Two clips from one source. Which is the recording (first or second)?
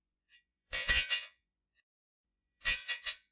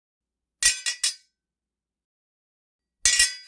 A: second